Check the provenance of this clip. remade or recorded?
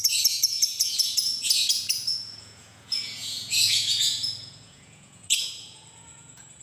remade